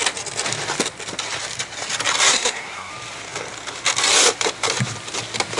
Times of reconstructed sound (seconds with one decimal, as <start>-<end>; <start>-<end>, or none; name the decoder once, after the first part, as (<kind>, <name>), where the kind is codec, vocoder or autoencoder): 2.3-2.9 (codec, SNAC)